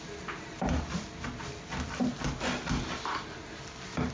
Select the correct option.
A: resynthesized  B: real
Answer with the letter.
B